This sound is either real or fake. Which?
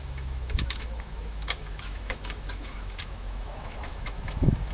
fake